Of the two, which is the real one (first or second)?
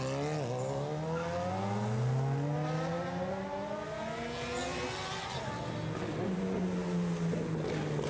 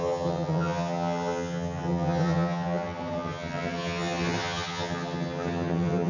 first